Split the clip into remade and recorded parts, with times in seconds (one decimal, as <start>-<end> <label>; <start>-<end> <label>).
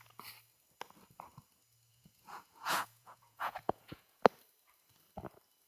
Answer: 0.0-1.9 recorded; 1.9-4.2 remade; 4.2-5.7 recorded